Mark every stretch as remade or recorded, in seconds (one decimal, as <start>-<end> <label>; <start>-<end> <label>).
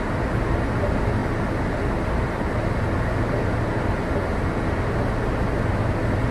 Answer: 0.0-6.3 recorded